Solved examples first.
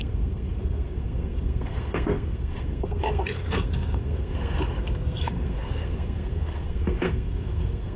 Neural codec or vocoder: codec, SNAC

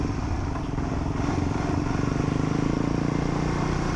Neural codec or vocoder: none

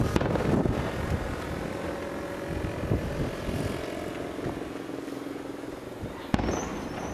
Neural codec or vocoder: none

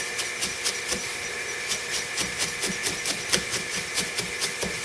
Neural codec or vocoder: none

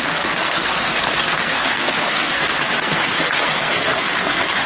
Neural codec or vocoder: codec, SNAC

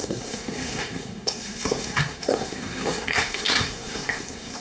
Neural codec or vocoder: codec, SNAC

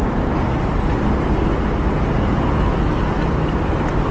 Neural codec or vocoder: none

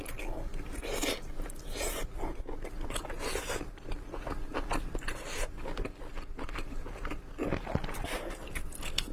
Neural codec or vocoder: none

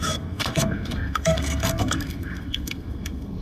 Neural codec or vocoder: codec, SNAC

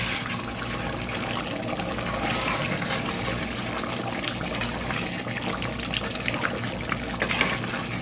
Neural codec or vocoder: none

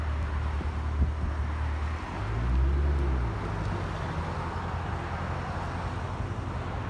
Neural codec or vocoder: none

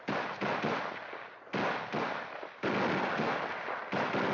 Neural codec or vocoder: none